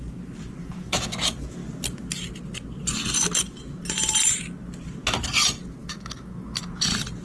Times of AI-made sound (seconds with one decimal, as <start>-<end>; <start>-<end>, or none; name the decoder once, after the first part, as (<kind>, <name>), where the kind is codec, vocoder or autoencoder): 0.6-1.2 (autoencoder, DAC-VAE); 5.8-6.6